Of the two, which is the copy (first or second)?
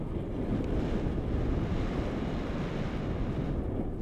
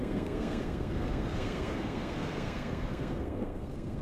second